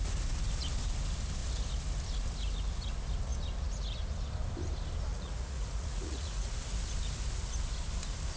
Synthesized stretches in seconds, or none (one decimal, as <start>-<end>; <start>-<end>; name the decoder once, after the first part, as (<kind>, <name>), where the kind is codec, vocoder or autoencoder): 5.1-6.5 (vocoder, Vocos)